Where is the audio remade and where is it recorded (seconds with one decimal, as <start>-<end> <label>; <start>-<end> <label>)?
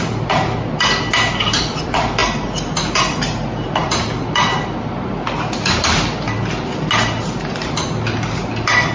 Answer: 0.0-8.9 recorded